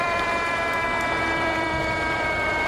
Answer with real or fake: fake